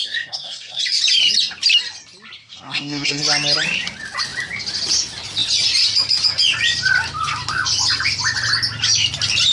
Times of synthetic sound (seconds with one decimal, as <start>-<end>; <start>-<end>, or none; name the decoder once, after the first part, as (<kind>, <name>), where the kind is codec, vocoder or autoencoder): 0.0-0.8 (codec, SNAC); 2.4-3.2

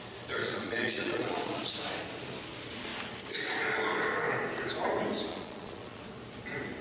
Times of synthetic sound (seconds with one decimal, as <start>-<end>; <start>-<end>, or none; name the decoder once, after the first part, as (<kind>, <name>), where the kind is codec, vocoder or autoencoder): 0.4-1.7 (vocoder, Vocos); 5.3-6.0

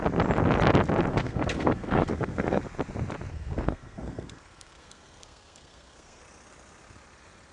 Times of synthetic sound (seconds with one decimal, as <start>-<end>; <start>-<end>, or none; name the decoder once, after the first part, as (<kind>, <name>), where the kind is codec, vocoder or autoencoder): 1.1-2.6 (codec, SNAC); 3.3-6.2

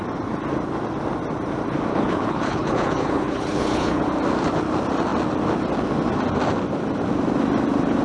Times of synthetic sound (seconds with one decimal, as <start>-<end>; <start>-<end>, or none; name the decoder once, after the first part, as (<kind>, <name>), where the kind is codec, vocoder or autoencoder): 1.9-4.0 (codec, HILCodec)

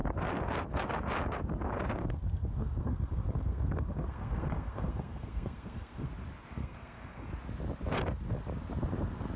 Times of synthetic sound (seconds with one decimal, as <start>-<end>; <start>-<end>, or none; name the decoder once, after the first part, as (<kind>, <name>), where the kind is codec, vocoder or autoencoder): 2.0-6.1 (codec, SNAC); 6.6-7.3

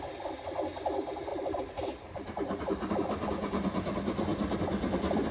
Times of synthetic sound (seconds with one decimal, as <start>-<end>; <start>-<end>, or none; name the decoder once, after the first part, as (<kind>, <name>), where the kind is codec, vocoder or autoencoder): 1.3-2.9 (vocoder, BigVGAN v2)

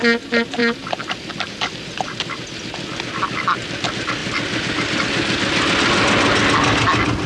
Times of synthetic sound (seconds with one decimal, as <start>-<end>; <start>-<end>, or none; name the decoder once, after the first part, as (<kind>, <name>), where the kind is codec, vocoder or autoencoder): 0.6-1.3 (vocoder, BigVGAN v2)